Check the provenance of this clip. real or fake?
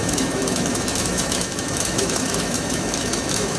fake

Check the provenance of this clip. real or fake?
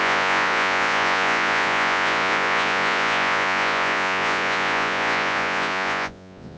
fake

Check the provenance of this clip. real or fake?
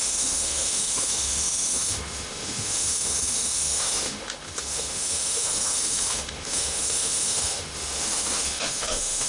fake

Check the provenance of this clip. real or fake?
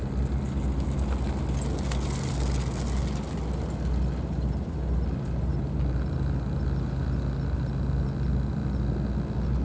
real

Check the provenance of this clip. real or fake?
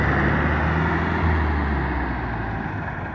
real